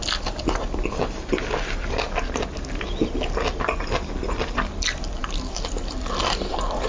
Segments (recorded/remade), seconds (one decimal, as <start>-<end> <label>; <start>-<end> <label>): 0.0-6.9 recorded